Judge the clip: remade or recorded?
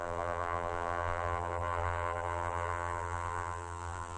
remade